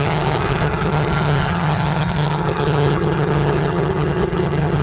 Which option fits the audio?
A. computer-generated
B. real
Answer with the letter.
A